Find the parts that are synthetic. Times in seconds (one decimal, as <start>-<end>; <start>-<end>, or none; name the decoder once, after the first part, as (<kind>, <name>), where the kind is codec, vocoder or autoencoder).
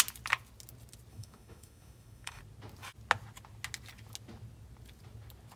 1.1-2.4 (autoencoder, DAC-VAE)